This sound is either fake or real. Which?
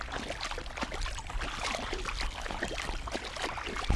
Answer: real